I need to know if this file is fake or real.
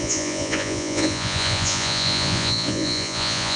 fake